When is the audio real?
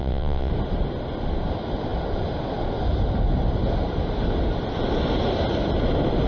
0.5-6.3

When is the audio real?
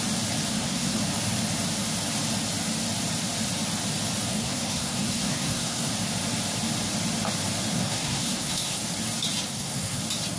0.0-0.5; 1.0-4.3; 5.9-7.7; 8.8-9.5; 10.0-10.4